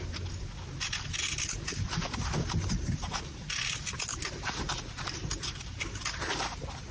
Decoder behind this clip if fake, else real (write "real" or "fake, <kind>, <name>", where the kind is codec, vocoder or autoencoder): real